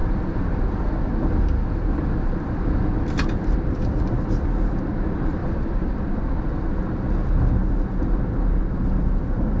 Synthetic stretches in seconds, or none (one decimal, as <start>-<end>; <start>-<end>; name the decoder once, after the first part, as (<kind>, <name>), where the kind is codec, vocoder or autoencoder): 0.0-4.0 (vocoder, BigVGAN v2); 5.4-6.7